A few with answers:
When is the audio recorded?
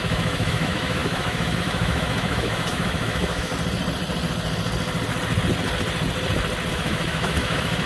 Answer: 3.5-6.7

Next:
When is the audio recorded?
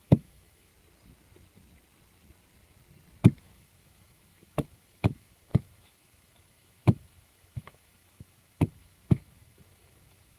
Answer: 0.7-3.4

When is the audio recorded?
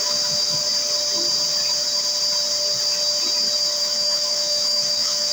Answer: 0.6-3.8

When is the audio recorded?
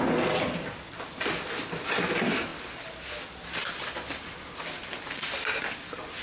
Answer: 0.0-6.2